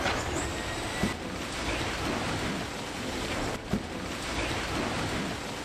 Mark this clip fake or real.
real